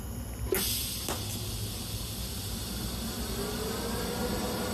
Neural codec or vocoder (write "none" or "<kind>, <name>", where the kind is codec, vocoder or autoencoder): none